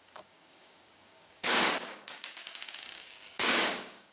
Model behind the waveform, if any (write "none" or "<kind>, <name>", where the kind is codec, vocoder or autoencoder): codec, DAC